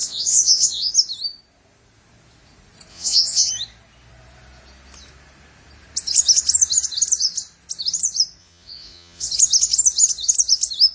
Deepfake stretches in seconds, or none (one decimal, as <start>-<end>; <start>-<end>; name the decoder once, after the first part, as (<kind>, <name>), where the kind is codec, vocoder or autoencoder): 0.0-0.9 (vocoder, Vocos); 2.9-3.5; 8.4-9.3